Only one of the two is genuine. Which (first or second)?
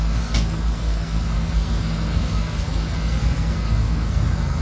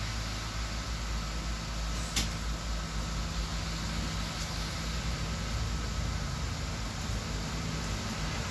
second